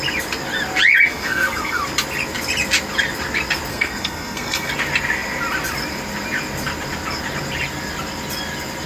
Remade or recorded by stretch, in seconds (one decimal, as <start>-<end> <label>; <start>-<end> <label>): 0.0-1.1 recorded; 1.1-1.8 remade; 1.8-3.7 recorded; 3.7-4.7 remade; 4.7-8.9 recorded